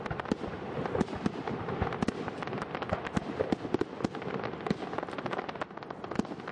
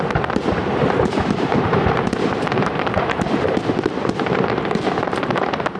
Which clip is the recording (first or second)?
first